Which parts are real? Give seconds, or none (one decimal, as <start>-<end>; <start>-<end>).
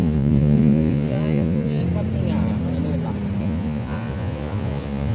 1.8-3.4